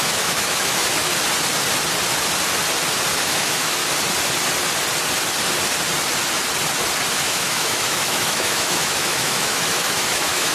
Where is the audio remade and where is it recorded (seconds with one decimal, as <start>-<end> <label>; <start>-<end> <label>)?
0.0-1.1 remade; 1.1-3.2 recorded; 3.2-3.8 remade; 3.8-7.1 recorded; 7.1-10.5 remade